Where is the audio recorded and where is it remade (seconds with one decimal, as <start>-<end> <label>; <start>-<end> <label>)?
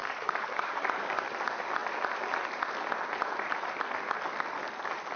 0.0-1.2 remade; 1.2-5.2 recorded